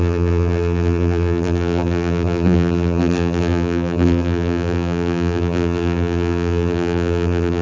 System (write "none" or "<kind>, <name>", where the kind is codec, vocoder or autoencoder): vocoder, BigVGAN v2